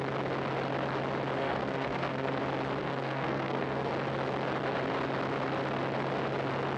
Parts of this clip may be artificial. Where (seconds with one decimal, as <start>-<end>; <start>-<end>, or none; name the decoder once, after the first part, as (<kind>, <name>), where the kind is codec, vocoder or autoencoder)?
1.4-2.4 (codec, SNAC); 2.8-3.9